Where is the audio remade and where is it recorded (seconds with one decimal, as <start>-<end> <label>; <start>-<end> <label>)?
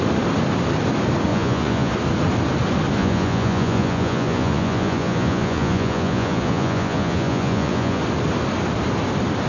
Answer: 0.0-1.3 recorded; 1.3-1.9 remade; 1.9-3.0 recorded; 3.0-8.0 remade; 8.0-9.5 recorded